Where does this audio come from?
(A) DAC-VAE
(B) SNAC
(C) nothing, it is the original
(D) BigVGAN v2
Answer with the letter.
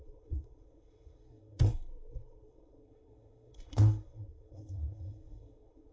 B